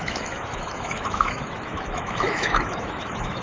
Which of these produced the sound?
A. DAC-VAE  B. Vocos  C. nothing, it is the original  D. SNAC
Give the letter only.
A